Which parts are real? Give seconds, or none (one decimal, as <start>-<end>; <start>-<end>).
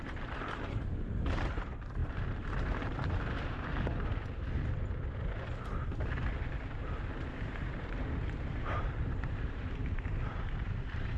3.7-6.3